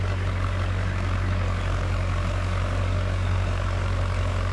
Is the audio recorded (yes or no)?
no